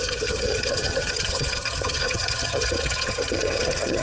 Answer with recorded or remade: remade